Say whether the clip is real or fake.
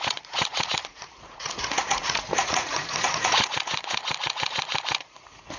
fake